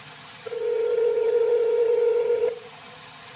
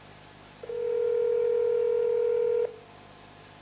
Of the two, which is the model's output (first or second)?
first